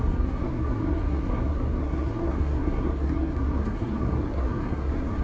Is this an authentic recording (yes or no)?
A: no